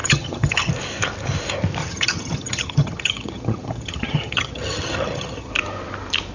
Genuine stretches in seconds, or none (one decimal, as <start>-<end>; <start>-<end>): 0.7-1.8; 5.5-6.3